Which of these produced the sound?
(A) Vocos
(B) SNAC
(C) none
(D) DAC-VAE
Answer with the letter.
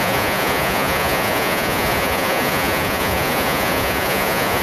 A